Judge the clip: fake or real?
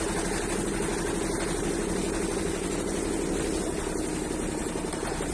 real